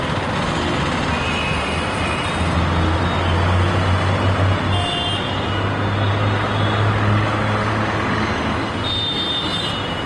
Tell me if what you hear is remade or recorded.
recorded